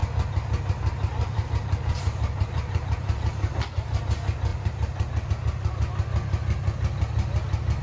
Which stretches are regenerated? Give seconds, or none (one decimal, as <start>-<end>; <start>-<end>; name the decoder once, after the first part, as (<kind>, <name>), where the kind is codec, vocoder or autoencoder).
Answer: 1.1-4.0 (vocoder, BigVGAN v2); 4.5-5.3